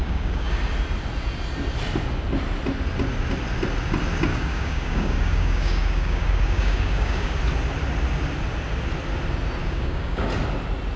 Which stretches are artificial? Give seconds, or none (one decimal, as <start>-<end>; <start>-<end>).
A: 0.0-0.6; 4.3-7.4; 9.6-10.3

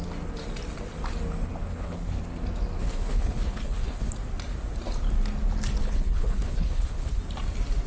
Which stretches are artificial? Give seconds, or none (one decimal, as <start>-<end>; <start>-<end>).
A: 1.7-2.2; 2.8-4.1; 5.8-7.2